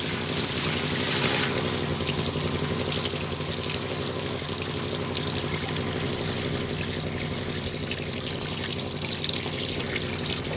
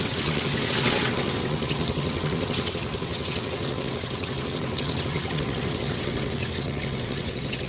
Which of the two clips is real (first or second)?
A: first